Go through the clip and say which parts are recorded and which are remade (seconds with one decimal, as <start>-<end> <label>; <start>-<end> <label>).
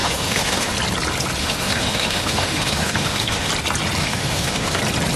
0.0-0.7 remade; 0.7-1.4 recorded; 1.4-3.5 remade; 3.5-4.0 recorded; 4.0-4.8 remade; 4.8-5.2 recorded